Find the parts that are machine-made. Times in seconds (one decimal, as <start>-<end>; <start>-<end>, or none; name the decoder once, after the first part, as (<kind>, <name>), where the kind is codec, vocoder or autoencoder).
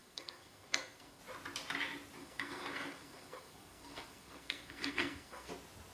0.0-1.2 (codec, SNAC); 2.2-5.5